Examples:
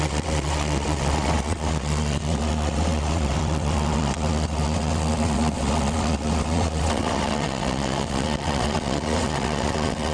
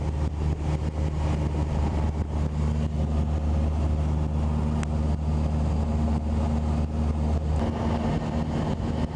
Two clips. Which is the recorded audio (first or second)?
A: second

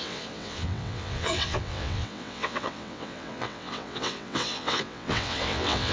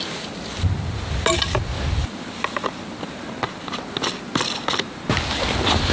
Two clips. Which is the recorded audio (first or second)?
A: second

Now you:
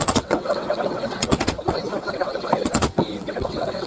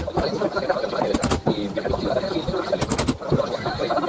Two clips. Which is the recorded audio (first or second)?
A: second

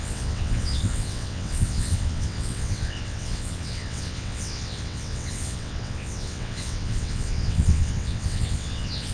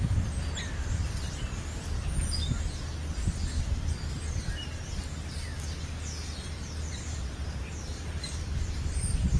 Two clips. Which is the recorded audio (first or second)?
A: second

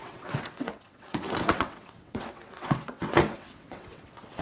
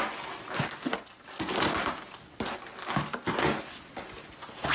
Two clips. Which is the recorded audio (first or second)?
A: second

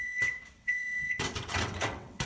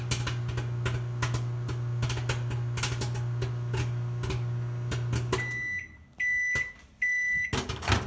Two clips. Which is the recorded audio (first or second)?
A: second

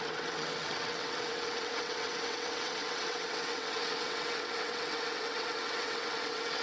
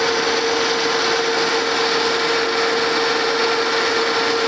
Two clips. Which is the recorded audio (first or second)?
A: second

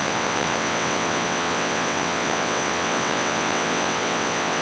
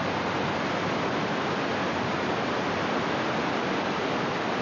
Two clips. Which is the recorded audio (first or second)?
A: second